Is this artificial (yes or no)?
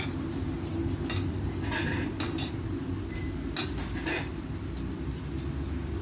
no